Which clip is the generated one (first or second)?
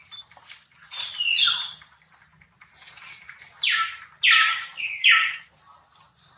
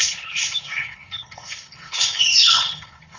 second